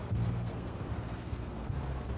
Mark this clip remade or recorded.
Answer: remade